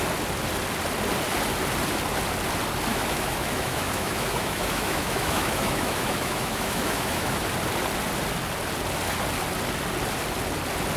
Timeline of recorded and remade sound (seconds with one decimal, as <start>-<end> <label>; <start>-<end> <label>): 0.0-2.9 recorded; 2.9-7.4 remade; 7.4-11.0 recorded